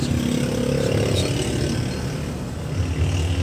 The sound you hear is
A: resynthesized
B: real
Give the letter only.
B